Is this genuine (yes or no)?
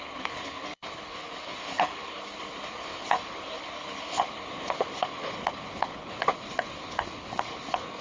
no